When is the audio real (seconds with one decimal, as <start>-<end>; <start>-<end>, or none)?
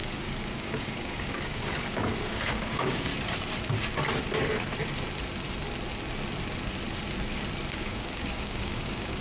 3.1-7.7